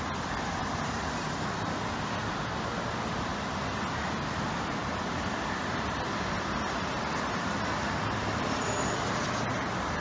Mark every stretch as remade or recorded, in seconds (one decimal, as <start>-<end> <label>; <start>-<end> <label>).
0.0-10.0 recorded